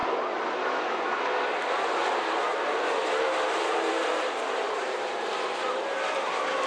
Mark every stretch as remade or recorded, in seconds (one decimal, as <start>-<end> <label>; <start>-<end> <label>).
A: 0.0-1.7 recorded; 1.7-6.7 remade

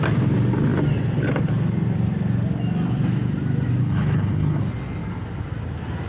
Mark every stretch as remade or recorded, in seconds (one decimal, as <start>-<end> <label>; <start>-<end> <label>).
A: 0.0-3.8 recorded; 3.8-4.6 remade; 4.6-6.1 recorded

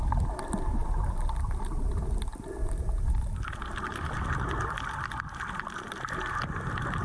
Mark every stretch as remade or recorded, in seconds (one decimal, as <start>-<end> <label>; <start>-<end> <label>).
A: 0.0-7.0 recorded

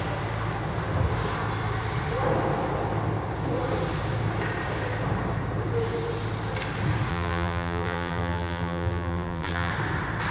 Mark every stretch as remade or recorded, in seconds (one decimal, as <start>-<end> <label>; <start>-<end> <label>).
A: 0.0-7.1 recorded; 7.1-9.7 remade; 9.7-10.3 recorded

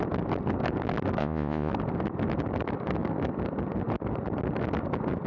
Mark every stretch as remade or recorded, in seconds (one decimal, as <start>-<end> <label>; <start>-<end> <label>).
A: 0.0-1.2 recorded; 1.2-1.7 remade; 1.7-5.3 recorded

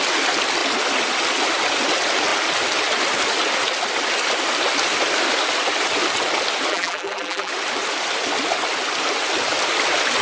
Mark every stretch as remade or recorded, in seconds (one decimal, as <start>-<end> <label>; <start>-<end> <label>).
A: 0.0-6.7 recorded; 6.7-7.5 remade; 7.5-10.2 recorded